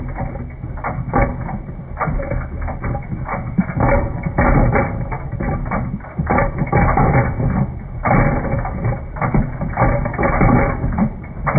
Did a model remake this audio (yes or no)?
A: no